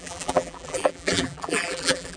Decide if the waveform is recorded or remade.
remade